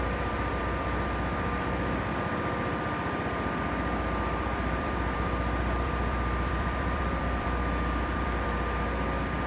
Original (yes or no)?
no